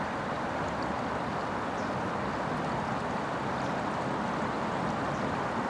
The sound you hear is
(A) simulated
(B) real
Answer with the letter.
B